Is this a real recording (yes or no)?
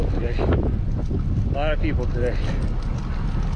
yes